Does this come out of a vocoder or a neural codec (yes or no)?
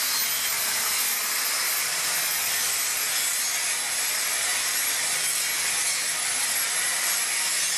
no